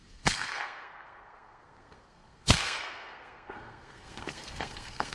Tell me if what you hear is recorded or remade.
remade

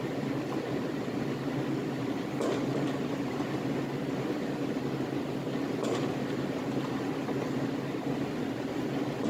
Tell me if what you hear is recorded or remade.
recorded